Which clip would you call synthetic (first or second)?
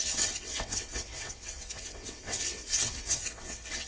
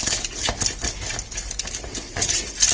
first